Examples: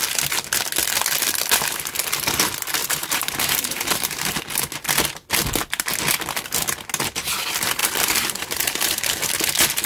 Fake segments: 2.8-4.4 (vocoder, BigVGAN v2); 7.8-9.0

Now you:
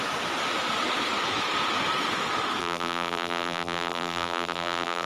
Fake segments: 2.6-5.1 (vocoder, BigVGAN v2)